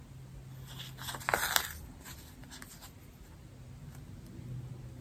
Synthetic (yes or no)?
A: no